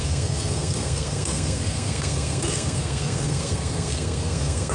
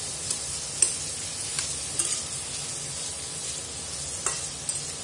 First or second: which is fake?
first